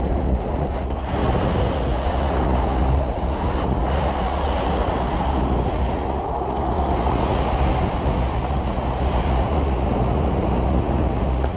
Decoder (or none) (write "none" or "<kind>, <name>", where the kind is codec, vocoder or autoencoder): vocoder, Vocos